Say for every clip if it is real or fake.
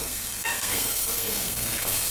fake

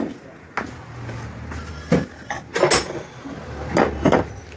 real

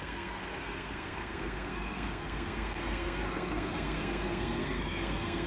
fake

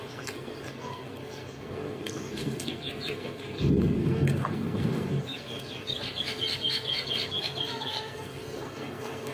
fake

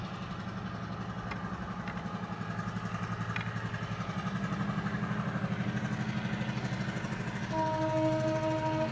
real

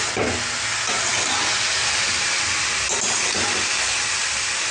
real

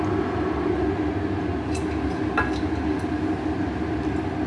real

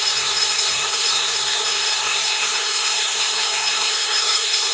fake